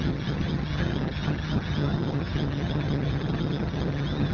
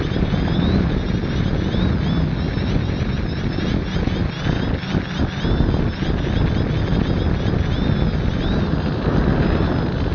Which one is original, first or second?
second